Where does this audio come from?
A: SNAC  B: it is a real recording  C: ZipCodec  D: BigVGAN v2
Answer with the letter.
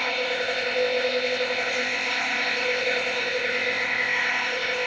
C